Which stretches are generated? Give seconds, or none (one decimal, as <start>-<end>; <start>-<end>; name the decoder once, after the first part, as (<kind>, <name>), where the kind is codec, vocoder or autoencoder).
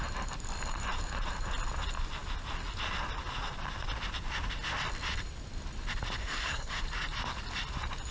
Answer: 6.2-6.8 (codec, SNAC)